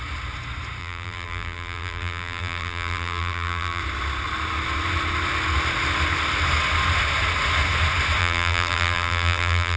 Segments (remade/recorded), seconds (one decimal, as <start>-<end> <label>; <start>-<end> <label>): 0.0-0.8 recorded; 0.8-3.8 remade; 3.8-8.2 recorded; 8.2-9.8 remade